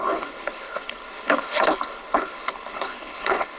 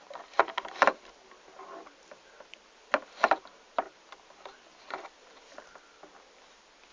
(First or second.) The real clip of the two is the second